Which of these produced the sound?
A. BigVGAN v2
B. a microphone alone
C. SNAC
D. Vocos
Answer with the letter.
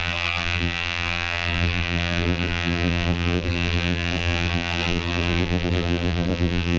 A